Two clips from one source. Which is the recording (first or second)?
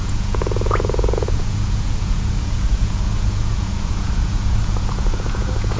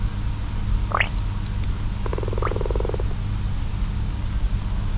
second